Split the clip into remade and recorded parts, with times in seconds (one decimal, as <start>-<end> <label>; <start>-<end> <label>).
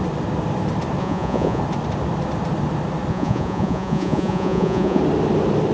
0.0-1.0 recorded; 1.0-1.6 remade; 1.6-3.1 recorded; 3.1-5.0 remade; 5.0-5.7 recorded